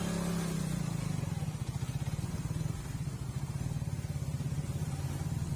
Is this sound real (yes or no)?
yes